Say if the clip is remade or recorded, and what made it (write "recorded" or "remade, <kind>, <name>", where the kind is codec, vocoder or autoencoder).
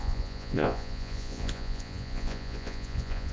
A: remade, vocoder, Vocos